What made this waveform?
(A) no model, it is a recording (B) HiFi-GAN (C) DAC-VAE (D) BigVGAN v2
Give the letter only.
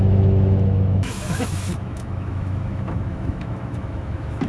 C